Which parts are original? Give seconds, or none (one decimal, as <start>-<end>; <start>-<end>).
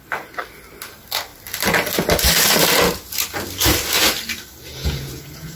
0.0-4.7